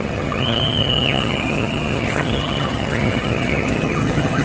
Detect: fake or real fake